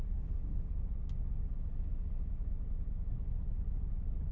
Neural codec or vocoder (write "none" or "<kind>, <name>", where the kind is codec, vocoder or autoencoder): none